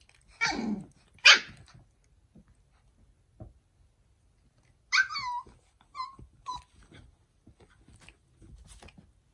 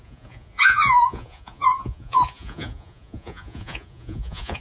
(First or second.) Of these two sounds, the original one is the first